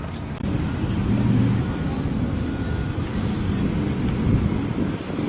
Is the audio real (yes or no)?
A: yes